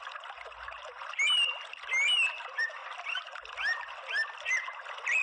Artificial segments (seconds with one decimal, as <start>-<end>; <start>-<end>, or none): none